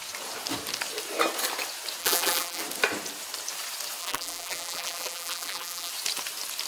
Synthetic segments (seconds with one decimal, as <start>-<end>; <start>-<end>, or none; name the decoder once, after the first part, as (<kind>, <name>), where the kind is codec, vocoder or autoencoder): 2.0-2.6 (vocoder, BigVGAN v2); 4.0-5.9